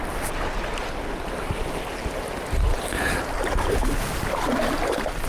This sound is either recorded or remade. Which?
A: recorded